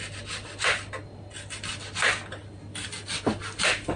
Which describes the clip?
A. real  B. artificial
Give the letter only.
A